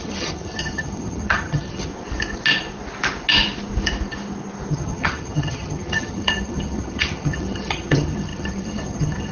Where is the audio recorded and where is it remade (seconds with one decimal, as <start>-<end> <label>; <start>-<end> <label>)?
0.0-1.9 remade; 1.9-4.7 recorded; 4.7-9.3 remade